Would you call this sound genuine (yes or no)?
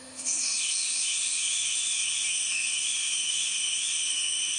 no